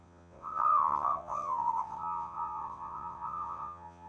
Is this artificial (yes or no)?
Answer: yes